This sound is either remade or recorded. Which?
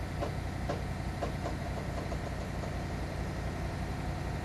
recorded